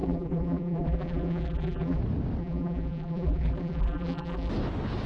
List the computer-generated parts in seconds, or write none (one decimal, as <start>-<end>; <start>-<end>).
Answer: 0.0-2.0; 2.4-4.5